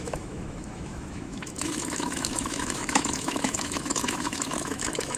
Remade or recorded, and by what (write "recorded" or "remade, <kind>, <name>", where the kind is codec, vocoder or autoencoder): remade, autoencoder, DAC-VAE